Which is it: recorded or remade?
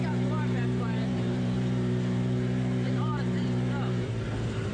remade